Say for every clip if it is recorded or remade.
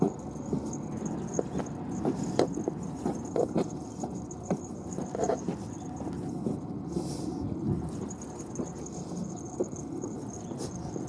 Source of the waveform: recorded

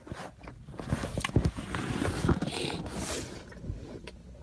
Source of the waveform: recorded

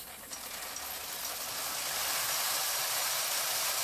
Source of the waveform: recorded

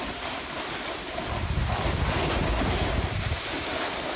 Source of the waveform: recorded